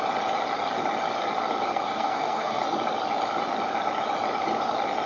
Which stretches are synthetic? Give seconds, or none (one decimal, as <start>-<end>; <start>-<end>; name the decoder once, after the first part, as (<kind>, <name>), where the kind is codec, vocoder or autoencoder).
1.7-2.6 (codec, SNAC)